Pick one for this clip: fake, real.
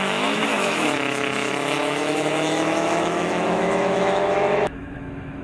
fake